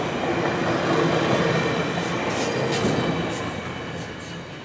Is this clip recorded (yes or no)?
yes